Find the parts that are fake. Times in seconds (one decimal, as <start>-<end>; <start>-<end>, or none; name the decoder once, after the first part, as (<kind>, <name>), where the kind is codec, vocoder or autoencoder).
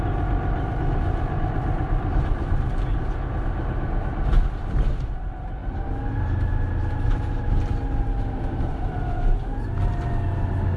none